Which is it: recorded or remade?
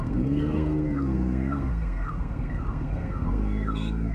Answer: remade